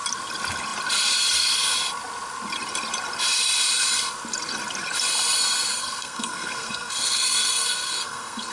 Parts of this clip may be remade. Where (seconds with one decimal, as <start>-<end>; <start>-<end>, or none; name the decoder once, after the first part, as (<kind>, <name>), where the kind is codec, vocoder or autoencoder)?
5.7-8.5 (codec, SNAC)